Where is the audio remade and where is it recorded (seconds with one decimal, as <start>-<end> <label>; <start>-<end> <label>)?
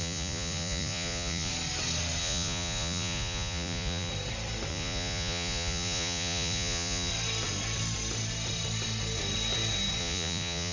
0.0-1.5 remade; 1.5-2.2 recorded; 2.2-4.1 remade; 4.1-4.7 recorded; 4.7-7.1 remade; 7.1-10.0 recorded; 10.0-10.7 remade